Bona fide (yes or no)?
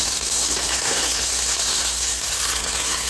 no